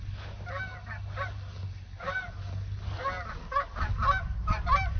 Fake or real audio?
real